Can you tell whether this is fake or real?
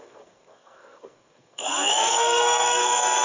fake